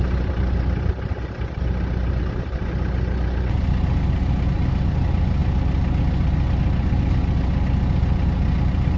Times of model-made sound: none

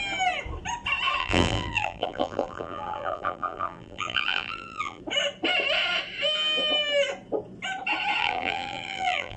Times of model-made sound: 1.2-5.0 (vocoder, BigVGAN v2); 8.2-9.4

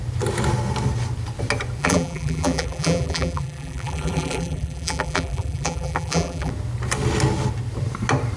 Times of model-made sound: 1.8-6.5 (vocoder, BigVGAN v2)